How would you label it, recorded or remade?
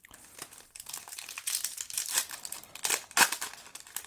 recorded